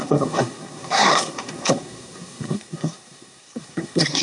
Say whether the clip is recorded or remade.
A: remade